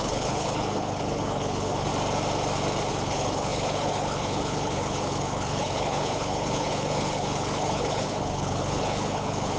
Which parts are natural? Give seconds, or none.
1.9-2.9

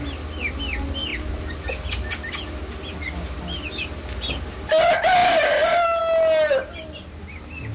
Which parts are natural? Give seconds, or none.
0.0-7.7

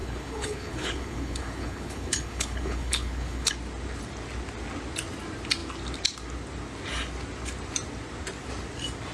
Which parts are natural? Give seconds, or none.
3.5-9.1

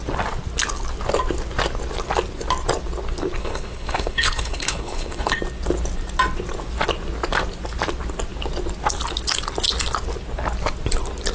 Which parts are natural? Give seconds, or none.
0.0-3.4; 5.4-11.3

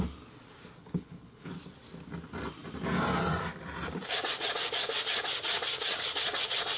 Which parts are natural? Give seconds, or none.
0.0-0.8; 1.5-6.8

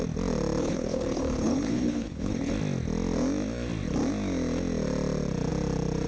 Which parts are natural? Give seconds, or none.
0.0-0.6; 2.5-6.1

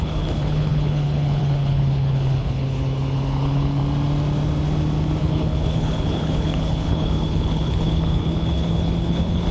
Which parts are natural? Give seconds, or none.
3.8-5.2

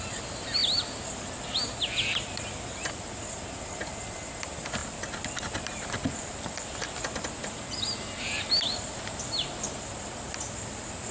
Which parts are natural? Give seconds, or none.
0.0-11.1